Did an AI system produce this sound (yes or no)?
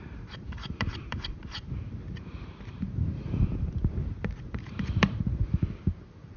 yes